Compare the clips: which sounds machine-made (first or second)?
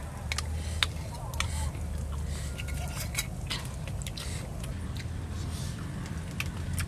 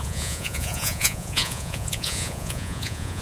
second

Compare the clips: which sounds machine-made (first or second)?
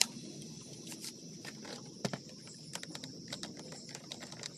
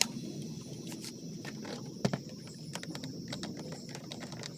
first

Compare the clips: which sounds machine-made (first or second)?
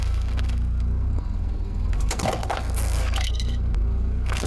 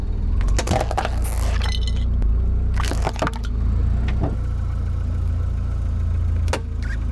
first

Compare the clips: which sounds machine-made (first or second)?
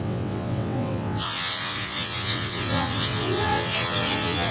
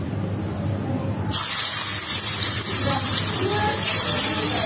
first